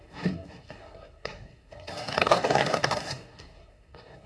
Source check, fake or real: fake